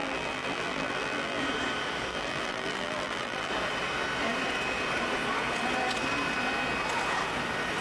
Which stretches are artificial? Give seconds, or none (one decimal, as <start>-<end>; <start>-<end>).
0.0-1.4; 2.1-3.5